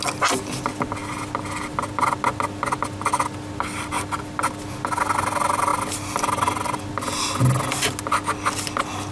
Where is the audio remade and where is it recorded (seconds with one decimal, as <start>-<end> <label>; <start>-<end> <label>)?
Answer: 0.0-9.1 recorded